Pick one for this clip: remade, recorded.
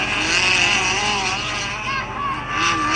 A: recorded